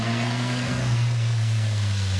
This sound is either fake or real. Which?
fake